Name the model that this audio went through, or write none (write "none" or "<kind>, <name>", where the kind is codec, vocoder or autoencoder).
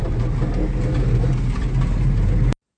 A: none